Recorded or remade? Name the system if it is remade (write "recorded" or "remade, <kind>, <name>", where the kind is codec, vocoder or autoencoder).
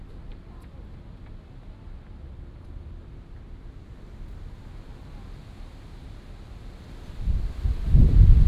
recorded